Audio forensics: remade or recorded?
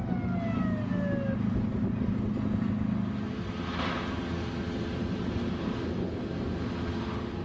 recorded